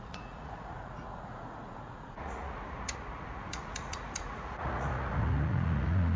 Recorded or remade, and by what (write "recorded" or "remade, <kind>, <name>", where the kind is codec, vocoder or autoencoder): remade, vocoder, Vocos